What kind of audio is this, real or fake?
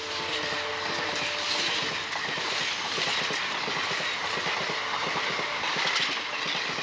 real